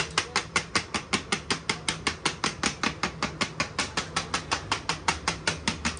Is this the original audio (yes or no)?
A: yes